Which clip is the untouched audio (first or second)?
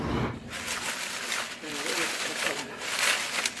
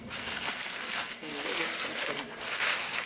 first